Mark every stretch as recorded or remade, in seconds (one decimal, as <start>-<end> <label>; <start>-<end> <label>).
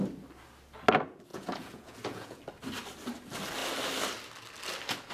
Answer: 0.0-1.3 recorded; 1.3-2.4 remade; 2.4-5.1 recorded